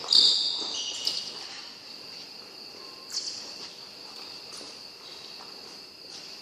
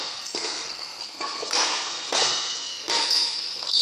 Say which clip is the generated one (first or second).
second